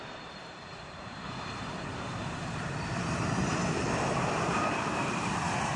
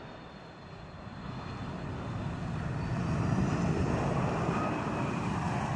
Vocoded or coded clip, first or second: first